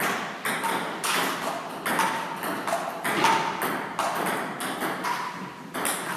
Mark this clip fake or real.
real